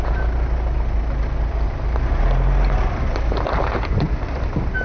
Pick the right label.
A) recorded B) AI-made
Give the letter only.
A